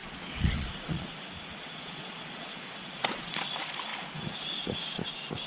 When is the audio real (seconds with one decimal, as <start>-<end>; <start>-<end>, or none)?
1.1-1.5; 3.3-5.5